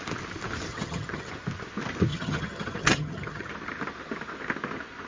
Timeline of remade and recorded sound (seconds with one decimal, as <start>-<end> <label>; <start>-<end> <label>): 0.0-0.7 recorded; 0.7-1.3 remade; 1.3-2.1 recorded; 2.1-3.5 remade; 3.5-5.1 recorded